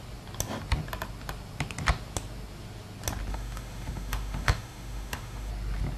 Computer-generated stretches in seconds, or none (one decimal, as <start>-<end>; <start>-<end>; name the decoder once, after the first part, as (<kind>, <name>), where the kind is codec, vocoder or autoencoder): 3.3-5.5 (autoencoder, DAC-VAE)